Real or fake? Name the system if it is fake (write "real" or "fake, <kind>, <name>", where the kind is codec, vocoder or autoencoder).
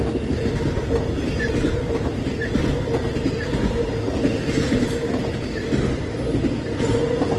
real